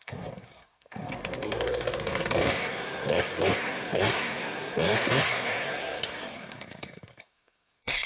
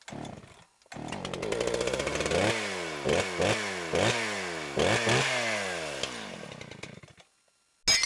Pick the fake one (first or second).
first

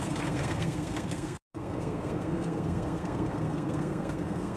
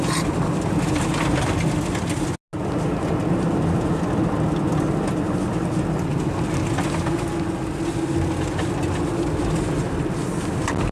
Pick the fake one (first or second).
first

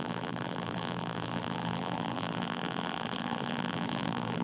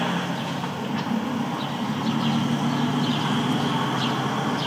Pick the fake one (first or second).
first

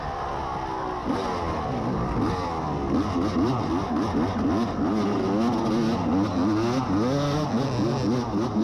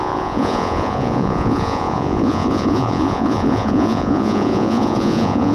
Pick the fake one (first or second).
second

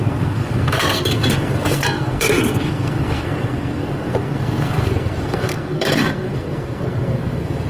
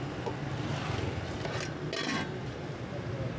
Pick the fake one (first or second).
first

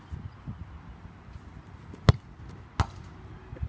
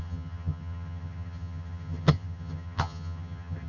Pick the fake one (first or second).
second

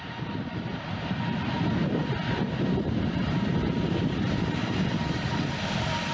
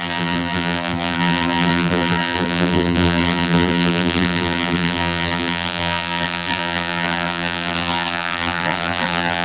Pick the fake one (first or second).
second